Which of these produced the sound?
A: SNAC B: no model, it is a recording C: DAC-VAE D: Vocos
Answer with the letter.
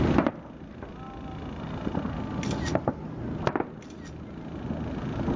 B